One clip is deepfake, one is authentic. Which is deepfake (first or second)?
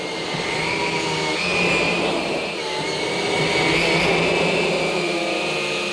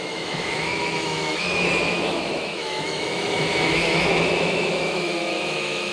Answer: second